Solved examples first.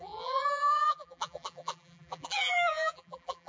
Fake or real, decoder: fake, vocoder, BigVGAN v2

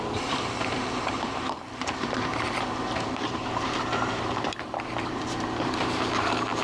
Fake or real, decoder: fake, vocoder, BigVGAN v2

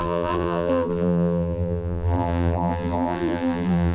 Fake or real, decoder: fake, vocoder, BigVGAN v2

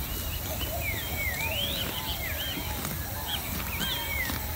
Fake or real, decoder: real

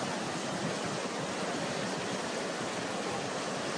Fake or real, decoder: real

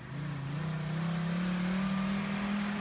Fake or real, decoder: real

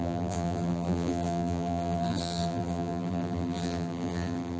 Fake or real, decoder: fake, vocoder, BigVGAN v2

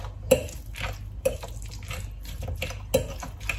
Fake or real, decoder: real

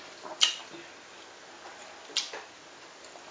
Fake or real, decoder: real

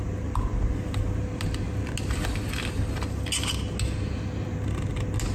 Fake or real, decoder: real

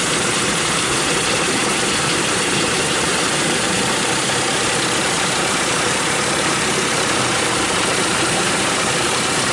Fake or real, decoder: fake, vocoder, BigVGAN v2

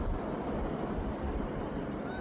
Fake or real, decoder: fake, vocoder, BigVGAN v2